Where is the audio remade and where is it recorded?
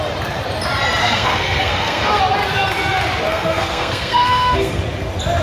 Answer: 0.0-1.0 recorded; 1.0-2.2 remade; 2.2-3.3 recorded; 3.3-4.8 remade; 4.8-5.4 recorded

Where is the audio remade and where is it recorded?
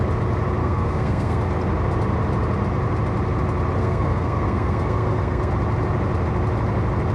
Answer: 0.0-0.6 recorded; 0.6-1.5 remade; 1.5-3.8 recorded; 3.8-5.5 remade; 5.5-7.1 recorded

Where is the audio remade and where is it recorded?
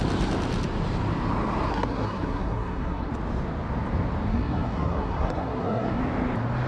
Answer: 0.0-1.7 recorded; 1.7-3.1 remade; 3.1-4.3 recorded; 4.3-6.0 remade; 6.0-6.7 recorded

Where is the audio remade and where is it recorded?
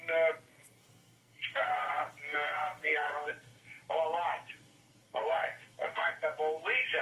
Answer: 0.0-0.6 recorded; 0.6-3.9 remade; 3.9-4.3 recorded; 4.3-6.6 remade; 6.6-7.0 recorded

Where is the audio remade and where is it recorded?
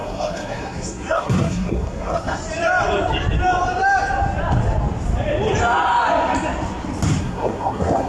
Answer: 0.0-2.4 remade; 2.4-7.2 recorded; 7.2-8.1 remade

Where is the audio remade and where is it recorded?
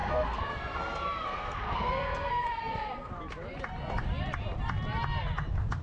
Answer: 0.0-3.1 remade; 3.1-5.8 recorded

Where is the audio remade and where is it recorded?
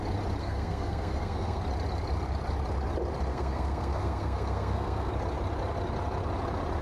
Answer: 0.0-0.4 recorded; 0.4-1.6 remade; 1.6-3.3 recorded; 3.3-5.1 remade; 5.1-6.8 recorded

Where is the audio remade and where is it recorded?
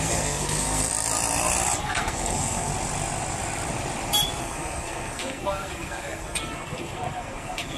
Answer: 0.0-0.9 remade; 0.9-1.8 recorded; 1.8-2.7 remade; 2.7-4.4 recorded; 4.4-7.8 remade